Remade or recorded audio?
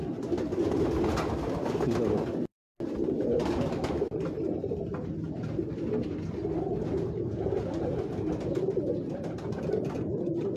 recorded